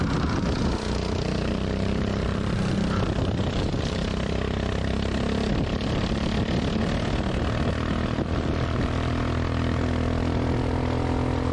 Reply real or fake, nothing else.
real